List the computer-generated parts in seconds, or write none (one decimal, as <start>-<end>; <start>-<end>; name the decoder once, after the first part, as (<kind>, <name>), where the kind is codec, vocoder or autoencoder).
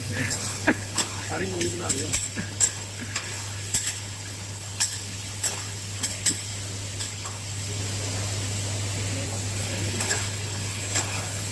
0.0-6.5 (codec, HILCodec); 7.0-7.8; 9.6-11.5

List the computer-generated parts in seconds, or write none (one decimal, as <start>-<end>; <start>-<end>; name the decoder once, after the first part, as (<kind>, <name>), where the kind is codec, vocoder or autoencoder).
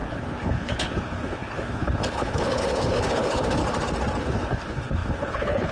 0.0-3.6 (codec, HILCodec); 4.2-5.7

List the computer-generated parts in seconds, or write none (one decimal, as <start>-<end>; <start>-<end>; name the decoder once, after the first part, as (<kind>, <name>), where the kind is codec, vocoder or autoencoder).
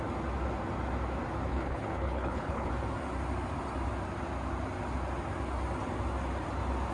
1.5-2.7 (codec, HILCodec)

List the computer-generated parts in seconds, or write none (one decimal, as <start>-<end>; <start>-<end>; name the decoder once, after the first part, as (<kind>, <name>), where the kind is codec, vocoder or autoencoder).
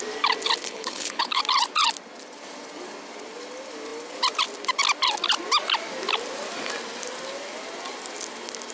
0.6-1.4 (codec, HILCodec)